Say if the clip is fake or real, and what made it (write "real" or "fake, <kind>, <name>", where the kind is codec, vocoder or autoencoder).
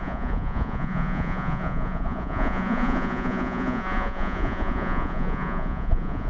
fake, vocoder, Vocos